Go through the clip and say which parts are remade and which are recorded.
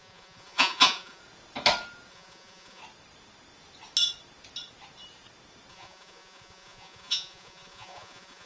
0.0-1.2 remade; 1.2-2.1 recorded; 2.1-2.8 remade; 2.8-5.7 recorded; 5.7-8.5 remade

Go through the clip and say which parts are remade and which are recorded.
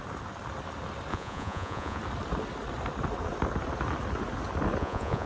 0.0-1.1 recorded; 1.1-2.0 remade; 2.0-4.8 recorded; 4.8-5.3 remade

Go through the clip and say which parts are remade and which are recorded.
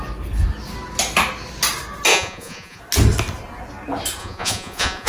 0.0-2.1 recorded; 2.1-2.8 remade; 2.8-4.2 recorded; 4.2-5.1 remade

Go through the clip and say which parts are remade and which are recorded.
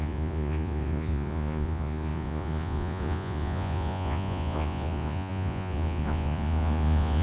0.0-7.2 remade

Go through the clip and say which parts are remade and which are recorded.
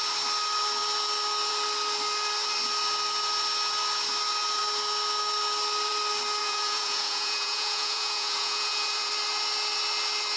0.0-6.4 recorded; 6.4-9.1 remade; 9.1-10.4 recorded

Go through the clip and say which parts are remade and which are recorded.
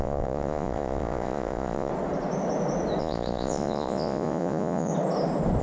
0.0-1.9 remade; 1.9-3.0 recorded; 3.0-4.9 remade; 4.9-5.6 recorded